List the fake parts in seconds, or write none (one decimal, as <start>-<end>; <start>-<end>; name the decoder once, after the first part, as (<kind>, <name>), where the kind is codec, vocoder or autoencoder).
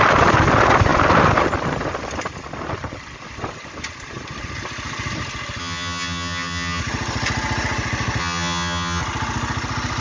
5.6-6.8 (vocoder, HiFi-GAN); 8.2-9.0